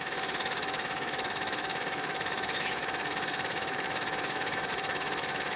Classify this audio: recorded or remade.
remade